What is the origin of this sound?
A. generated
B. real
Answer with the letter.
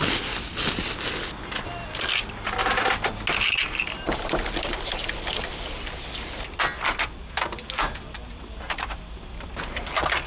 B